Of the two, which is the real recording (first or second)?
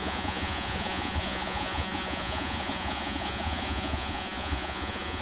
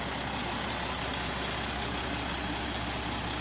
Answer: second